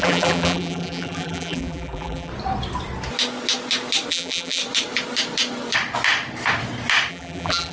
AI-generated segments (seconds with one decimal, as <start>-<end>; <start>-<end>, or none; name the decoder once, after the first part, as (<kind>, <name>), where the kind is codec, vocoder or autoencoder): 0.0-2.3 (vocoder, BigVGAN v2); 4.1-4.6; 7.1-7.7